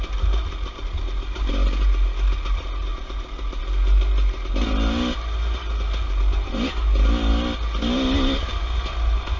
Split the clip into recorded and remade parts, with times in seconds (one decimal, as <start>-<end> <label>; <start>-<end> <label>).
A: 0.0-2.9 recorded; 2.9-3.6 remade; 3.6-9.4 recorded

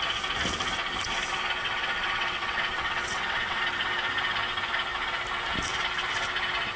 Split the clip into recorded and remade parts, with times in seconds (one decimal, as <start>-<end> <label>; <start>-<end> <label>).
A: 0.0-1.6 recorded; 1.6-3.6 remade; 3.6-6.8 recorded

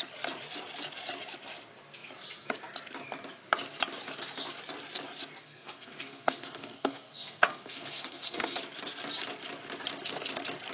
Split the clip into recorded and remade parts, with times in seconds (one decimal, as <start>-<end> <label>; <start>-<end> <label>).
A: 0.0-5.4 recorded; 5.4-8.6 remade; 8.6-10.7 recorded

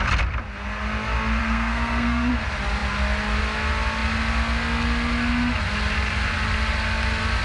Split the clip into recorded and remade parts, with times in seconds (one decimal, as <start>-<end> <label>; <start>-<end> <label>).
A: 0.0-1.4 recorded; 1.4-2.3 remade; 2.3-7.4 recorded

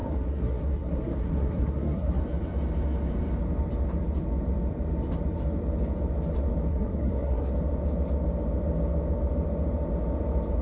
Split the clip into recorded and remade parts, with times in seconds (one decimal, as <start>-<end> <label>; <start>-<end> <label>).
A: 0.0-2.2 remade; 2.2-6.7 recorded; 6.7-7.5 remade; 7.5-10.6 recorded